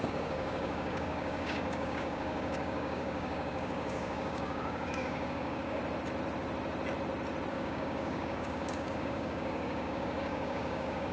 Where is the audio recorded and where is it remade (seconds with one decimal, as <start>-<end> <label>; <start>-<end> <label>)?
0.0-5.8 remade; 5.8-7.5 recorded; 7.5-11.1 remade